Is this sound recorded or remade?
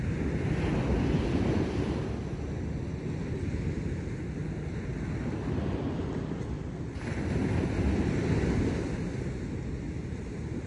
recorded